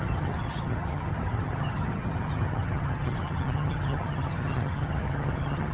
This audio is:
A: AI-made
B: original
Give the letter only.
A